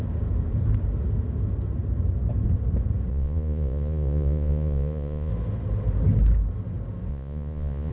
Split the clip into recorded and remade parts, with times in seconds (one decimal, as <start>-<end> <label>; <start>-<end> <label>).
0.0-3.1 recorded; 3.1-5.3 remade; 5.3-7.1 recorded; 7.1-7.9 remade